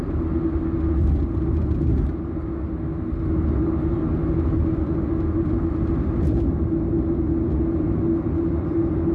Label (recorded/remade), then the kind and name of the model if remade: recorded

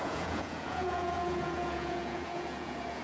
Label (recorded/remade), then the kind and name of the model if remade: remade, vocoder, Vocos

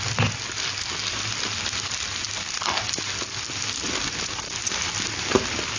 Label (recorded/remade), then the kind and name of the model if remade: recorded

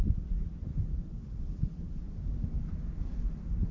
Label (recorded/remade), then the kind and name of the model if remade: recorded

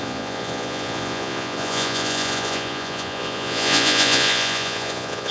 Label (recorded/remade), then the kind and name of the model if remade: remade, vocoder, Vocos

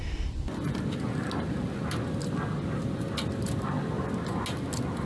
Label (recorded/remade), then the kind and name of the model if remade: recorded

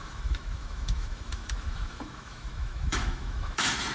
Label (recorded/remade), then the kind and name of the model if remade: remade, autoencoder, DAC-VAE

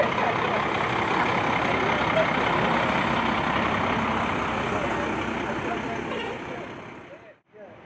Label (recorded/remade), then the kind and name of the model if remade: recorded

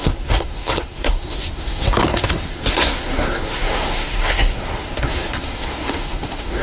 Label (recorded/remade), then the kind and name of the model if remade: remade, codec, SNAC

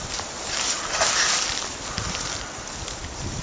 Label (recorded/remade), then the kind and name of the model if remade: recorded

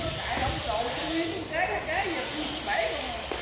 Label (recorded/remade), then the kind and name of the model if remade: recorded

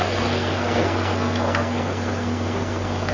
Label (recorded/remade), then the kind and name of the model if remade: remade, codec, SNAC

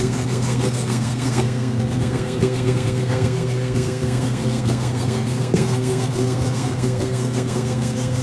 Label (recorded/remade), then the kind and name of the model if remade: remade, codec, SNAC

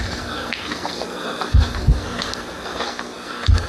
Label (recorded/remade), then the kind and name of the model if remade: remade, codec, SNAC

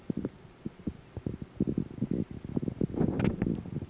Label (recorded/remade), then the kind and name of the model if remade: recorded